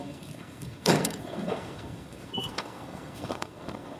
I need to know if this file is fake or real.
fake